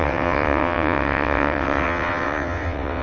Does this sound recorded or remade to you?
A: remade